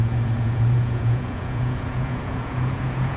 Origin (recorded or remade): remade